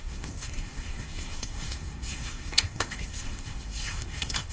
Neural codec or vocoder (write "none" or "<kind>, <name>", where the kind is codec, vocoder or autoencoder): codec, SNAC